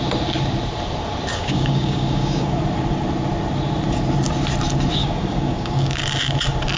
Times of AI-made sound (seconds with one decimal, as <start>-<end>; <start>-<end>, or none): 1.3-2.6; 5.0-6.0